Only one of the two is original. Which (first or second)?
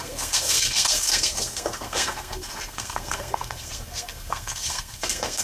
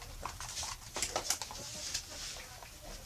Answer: second